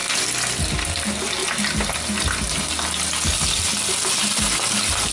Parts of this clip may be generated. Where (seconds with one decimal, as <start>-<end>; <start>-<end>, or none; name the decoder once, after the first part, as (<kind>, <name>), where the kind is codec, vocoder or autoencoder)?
none